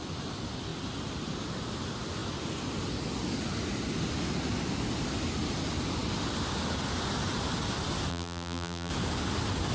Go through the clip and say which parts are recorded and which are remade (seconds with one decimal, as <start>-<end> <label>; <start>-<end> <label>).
0.0-8.1 recorded; 8.1-8.9 remade; 8.9-9.7 recorded